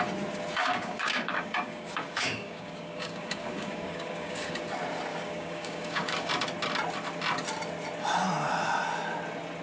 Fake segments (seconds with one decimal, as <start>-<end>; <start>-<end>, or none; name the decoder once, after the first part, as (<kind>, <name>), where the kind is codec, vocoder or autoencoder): 0.6-4.6 (codec, DAC); 5.1-6.3